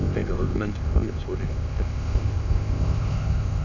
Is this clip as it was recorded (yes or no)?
no